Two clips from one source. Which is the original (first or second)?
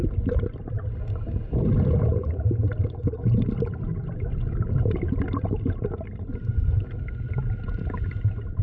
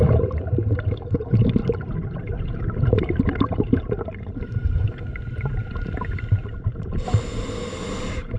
first